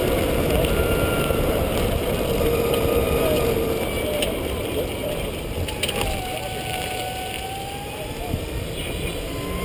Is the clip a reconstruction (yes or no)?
no